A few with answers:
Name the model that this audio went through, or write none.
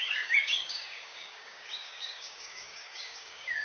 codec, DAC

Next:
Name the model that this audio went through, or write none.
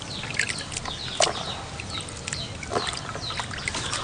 none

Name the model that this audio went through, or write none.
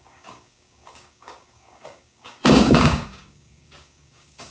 codec, DAC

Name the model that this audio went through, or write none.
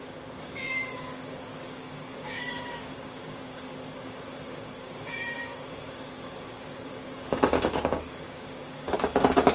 codec, DAC